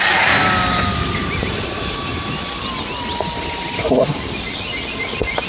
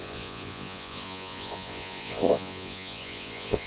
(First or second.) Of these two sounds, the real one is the first